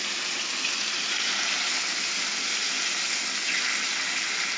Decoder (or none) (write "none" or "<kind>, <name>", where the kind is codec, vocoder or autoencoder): none